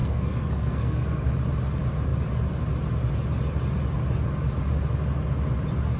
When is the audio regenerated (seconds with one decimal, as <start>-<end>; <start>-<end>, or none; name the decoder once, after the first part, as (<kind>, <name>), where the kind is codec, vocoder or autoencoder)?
0.0-1.3 (codec, SNAC)